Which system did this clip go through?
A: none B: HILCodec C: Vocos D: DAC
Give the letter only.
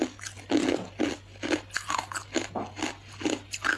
A